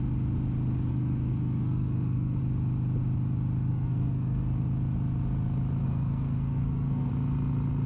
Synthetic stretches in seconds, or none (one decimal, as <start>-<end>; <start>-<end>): 0.9-2.4; 3.7-4.6; 5.8-7.1